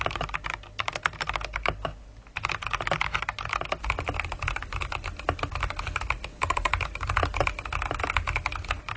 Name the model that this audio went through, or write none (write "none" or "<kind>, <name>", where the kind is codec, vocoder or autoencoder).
none